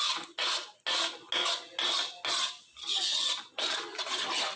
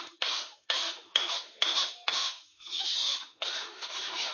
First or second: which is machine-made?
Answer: second